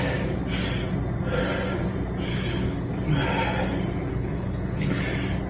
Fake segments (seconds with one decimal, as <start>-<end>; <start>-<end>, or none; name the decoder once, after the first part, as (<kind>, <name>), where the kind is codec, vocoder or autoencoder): 2.3-2.9 (codec, HILCodec); 4.1-5.0